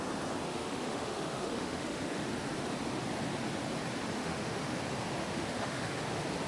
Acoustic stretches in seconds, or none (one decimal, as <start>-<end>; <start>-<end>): 0.0-0.5; 2.3-4.2; 4.8-5.2; 5.9-6.5